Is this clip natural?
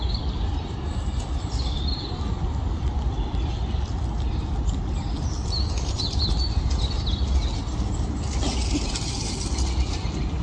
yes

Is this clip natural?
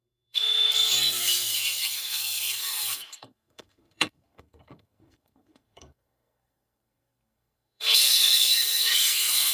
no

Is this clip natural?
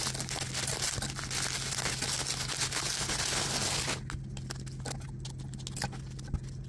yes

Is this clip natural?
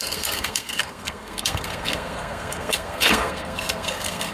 no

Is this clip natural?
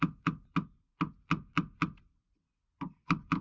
yes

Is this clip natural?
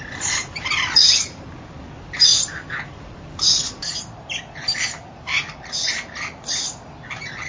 yes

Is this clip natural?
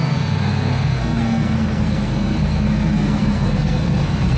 no